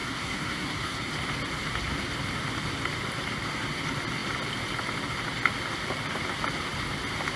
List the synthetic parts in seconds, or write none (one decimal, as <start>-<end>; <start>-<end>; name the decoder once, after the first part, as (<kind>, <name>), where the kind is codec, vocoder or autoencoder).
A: 0.0-1.1 (codec, SNAC)